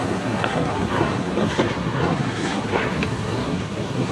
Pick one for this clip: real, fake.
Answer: fake